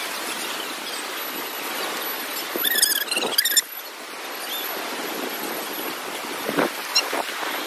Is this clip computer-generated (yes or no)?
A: no